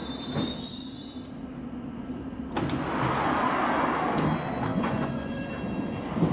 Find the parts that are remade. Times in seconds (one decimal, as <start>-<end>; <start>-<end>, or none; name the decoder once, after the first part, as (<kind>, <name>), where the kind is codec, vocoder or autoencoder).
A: 4.7-5.5 (vocoder, Vocos)